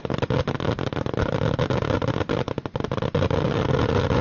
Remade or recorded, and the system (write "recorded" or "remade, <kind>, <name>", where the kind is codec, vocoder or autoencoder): recorded